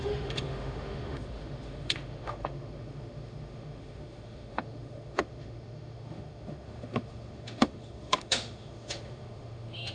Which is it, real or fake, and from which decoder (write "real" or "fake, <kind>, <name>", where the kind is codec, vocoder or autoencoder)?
fake, autoencoder, DAC-VAE